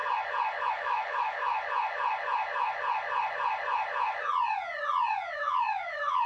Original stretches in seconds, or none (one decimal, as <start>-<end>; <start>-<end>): 0.0-0.7; 1.5-5.3